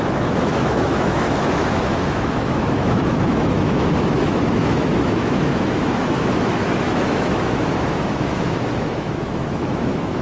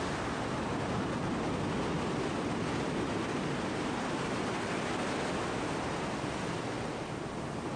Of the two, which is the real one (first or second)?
second